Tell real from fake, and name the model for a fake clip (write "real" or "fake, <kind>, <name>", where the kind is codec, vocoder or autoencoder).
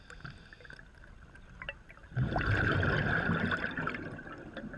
real